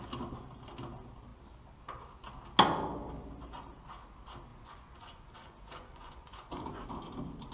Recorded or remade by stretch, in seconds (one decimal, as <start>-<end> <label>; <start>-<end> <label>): 0.0-4.5 recorded; 4.5-6.9 remade; 6.9-7.5 recorded